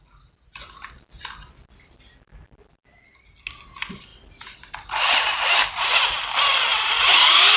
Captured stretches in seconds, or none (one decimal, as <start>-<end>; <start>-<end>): 0.0-6.7